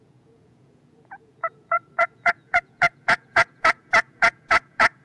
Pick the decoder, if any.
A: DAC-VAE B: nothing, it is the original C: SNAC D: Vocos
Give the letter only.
D